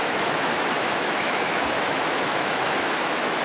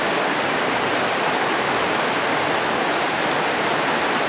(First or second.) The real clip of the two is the second